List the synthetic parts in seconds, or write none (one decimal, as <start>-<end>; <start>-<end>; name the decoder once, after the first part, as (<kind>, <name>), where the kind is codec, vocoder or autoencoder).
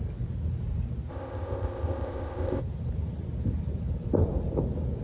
1.1-2.6 (codec, ZipCodec)